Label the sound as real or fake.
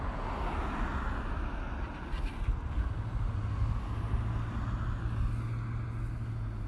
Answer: real